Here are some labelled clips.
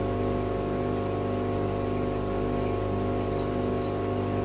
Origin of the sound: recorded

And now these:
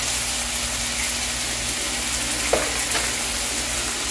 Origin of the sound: recorded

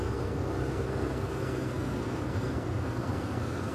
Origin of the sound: remade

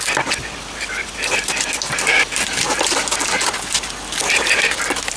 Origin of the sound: recorded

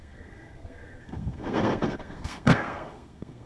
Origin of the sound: remade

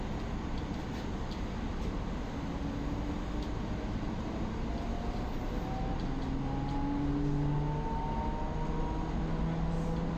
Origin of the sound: recorded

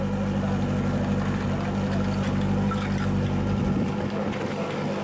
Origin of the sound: recorded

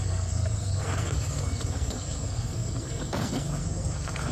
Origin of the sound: remade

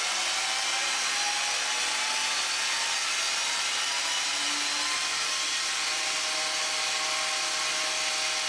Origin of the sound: recorded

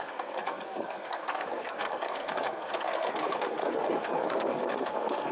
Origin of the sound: remade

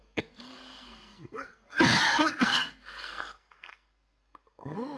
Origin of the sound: remade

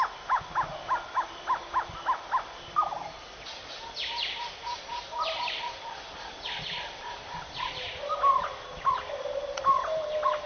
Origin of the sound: recorded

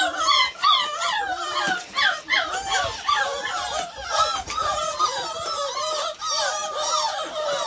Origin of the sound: recorded